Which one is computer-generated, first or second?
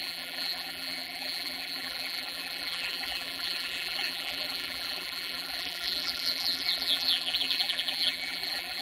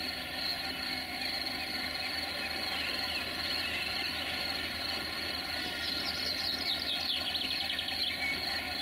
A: first